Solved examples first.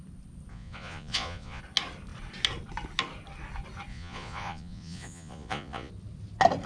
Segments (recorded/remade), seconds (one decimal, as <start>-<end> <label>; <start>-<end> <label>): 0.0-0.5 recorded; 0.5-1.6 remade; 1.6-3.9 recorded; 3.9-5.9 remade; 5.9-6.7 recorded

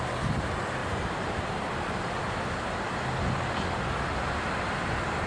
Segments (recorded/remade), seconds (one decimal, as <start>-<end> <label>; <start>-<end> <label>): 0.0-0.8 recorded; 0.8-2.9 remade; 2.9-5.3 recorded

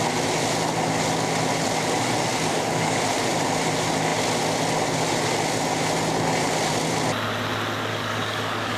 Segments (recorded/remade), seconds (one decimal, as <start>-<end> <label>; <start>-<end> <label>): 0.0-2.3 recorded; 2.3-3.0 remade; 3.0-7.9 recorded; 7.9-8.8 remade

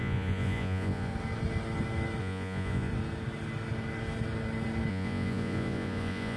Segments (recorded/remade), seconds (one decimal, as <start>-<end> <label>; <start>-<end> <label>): 0.0-1.1 remade; 1.1-2.2 recorded; 2.2-2.9 remade; 2.9-4.9 recorded; 4.9-6.4 remade